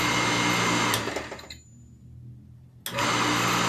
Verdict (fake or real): real